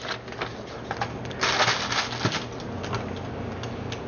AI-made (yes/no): no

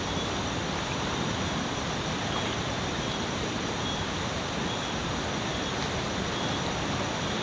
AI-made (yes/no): no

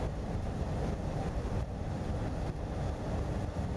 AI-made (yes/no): no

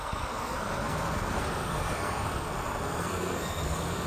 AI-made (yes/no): yes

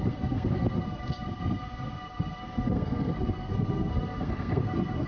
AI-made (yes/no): yes